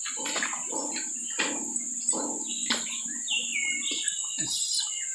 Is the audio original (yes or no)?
yes